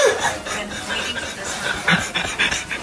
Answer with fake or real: real